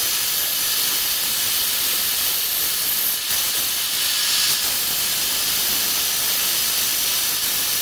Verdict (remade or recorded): recorded